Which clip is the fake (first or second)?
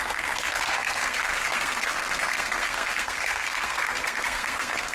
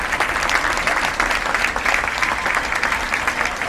first